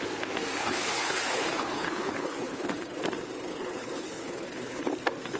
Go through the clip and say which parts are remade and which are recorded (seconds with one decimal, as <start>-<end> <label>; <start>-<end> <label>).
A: 0.0-0.6 recorded; 0.6-3.0 remade; 3.0-3.5 recorded; 3.5-4.8 remade; 4.8-5.4 recorded